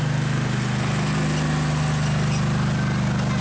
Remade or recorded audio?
recorded